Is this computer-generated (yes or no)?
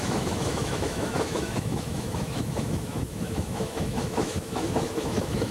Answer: yes